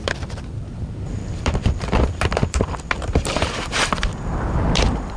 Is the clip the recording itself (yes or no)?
no